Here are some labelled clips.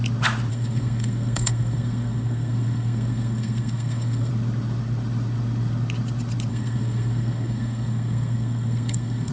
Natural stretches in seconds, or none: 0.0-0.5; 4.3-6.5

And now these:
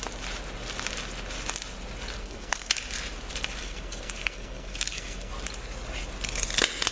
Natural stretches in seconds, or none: 0.0-2.2; 2.8-3.6; 5.3-6.9

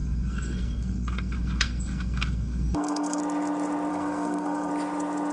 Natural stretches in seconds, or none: 3.2-3.9; 4.7-5.3

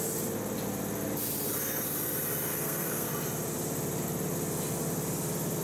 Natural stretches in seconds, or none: 0.0-2.5; 3.1-5.6

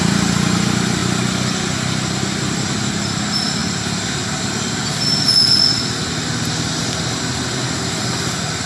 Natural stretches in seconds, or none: 0.0-8.7

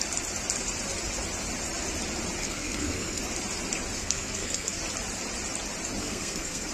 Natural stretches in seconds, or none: 0.0-2.4; 3.2-4.0; 4.8-6.0

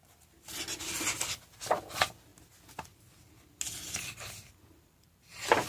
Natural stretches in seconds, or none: 0.0-5.7